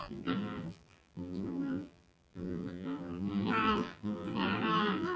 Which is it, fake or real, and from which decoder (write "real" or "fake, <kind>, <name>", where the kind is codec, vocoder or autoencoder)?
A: fake, vocoder, BigVGAN v2